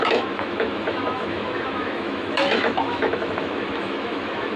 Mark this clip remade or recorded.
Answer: remade